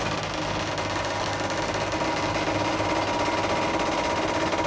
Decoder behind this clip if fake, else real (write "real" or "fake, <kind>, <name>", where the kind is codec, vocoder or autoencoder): real